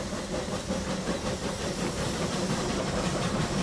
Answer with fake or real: fake